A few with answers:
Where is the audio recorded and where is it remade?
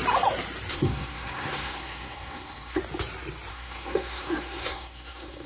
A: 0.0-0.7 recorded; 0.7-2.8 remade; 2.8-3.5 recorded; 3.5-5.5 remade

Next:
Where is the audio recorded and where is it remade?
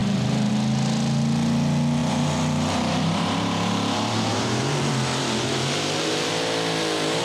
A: 0.0-0.5 remade; 0.5-2.0 recorded; 2.0-6.3 remade; 6.3-7.2 recorded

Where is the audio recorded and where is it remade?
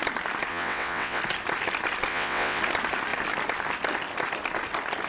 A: 0.0-0.5 recorded; 0.5-1.2 remade; 1.2-2.1 recorded; 2.1-2.6 remade; 2.6-5.1 recorded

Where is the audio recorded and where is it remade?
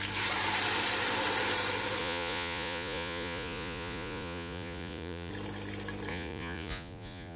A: 0.0-2.0 recorded; 2.0-5.3 remade; 5.3-6.1 recorded; 6.1-7.4 remade